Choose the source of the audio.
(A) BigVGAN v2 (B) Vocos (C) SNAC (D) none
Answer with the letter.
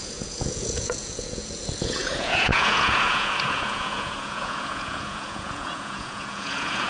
B